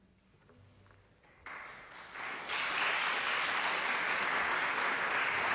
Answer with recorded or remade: recorded